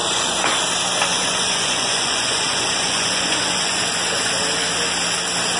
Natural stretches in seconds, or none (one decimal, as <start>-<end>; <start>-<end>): 0.6-1.1; 4.2-5.6